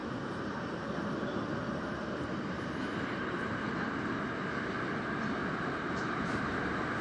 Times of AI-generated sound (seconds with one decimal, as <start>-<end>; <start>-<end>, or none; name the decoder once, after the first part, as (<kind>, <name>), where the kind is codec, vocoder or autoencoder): 0.0-1.1 (vocoder, BigVGAN v2); 1.6-4.3; 5.4-6.3